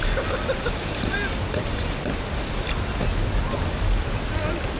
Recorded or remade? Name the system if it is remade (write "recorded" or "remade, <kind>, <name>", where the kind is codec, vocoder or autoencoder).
recorded